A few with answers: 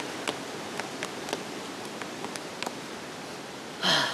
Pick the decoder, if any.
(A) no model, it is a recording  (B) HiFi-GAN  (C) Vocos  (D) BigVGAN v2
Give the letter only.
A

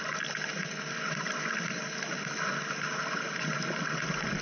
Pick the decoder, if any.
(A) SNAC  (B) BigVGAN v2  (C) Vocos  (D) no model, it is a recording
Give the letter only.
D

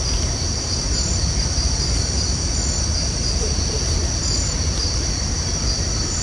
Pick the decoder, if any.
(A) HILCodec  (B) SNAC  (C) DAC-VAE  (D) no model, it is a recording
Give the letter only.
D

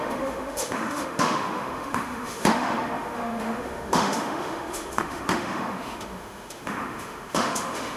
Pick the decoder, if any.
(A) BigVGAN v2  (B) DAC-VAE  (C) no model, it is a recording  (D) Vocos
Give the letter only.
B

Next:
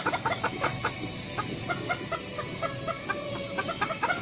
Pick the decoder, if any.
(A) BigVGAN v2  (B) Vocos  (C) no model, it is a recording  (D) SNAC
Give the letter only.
C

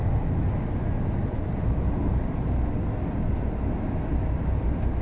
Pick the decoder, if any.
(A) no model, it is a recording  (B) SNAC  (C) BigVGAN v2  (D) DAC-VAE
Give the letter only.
A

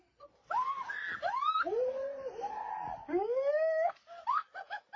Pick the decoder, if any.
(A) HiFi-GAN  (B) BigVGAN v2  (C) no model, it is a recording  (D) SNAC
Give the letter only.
C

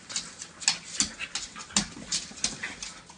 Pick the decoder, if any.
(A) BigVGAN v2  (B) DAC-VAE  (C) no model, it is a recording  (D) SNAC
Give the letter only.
C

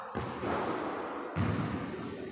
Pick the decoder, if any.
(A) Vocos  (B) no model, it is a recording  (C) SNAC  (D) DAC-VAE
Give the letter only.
B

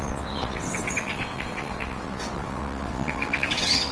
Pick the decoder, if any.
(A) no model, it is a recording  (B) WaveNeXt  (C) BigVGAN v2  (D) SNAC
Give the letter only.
B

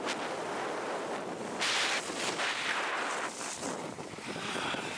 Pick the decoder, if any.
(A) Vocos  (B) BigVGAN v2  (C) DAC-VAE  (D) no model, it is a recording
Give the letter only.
B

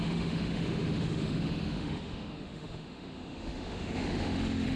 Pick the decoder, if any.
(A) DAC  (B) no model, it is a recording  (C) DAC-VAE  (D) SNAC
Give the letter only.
C